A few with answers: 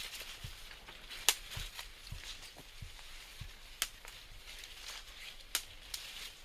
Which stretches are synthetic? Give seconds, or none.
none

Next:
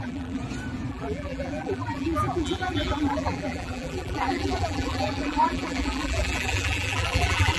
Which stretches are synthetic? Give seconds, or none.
0.0-0.4; 0.9-7.6